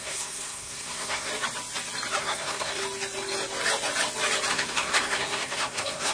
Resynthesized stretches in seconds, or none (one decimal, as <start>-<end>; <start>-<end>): 0.0-1.3; 2.2-2.8; 4.5-6.1